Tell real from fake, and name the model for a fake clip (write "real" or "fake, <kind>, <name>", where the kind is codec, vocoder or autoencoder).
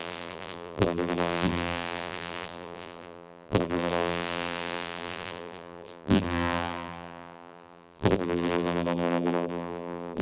fake, vocoder, BigVGAN v2